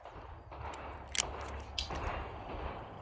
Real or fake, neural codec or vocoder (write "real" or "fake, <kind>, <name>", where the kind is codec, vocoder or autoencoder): real